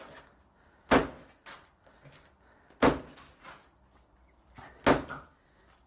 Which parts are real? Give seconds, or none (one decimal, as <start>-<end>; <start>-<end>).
0.0-5.9